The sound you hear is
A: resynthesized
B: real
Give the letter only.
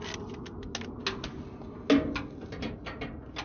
B